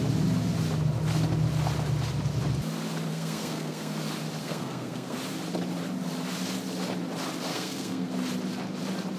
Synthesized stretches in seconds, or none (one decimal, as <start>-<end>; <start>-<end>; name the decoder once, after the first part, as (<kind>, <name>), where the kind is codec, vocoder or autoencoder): 3.1-4.0 (codec, SNAC); 4.4-5.2; 7.5-8.1